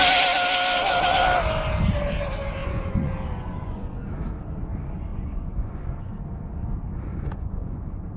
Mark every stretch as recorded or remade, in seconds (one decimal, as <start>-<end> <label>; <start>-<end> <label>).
0.0-2.6 recorded; 2.6-4.0 remade; 4.0-5.1 recorded; 5.1-6.1 remade; 6.1-7.1 recorded; 7.1-8.2 remade